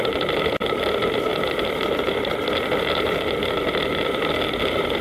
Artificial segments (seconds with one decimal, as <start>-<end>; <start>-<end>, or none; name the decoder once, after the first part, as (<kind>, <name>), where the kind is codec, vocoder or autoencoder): 1.3-4.3 (vocoder, BigVGAN v2)